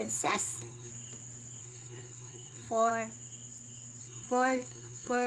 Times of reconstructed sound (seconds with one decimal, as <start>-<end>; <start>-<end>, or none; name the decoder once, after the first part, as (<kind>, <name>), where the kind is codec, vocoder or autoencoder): 0.0-0.9 (codec, SNAC); 1.6-2.9; 4.0-5.3